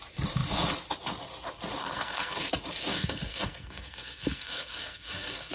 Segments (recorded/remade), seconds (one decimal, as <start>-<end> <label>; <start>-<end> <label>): 0.0-1.8 recorded; 1.8-2.5 remade; 2.5-2.9 recorded; 2.9-5.5 remade

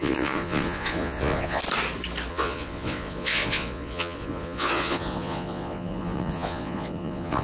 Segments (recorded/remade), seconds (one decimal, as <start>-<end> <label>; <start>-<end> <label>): 0.0-1.6 remade; 1.6-2.3 recorded; 2.3-7.4 remade

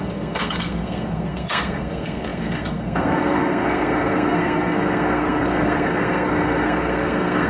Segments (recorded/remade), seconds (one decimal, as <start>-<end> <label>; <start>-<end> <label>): 0.0-7.5 remade